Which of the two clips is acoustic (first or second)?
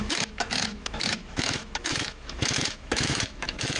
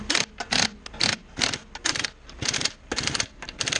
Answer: second